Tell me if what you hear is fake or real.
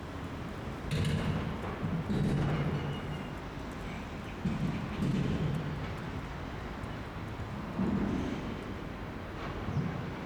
real